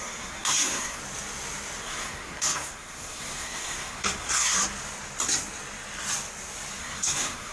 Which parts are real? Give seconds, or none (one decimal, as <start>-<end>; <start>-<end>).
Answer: 1.0-1.8; 4.6-6.8